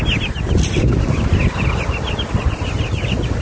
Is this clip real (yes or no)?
yes